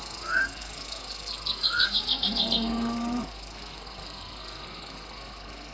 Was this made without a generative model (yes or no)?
no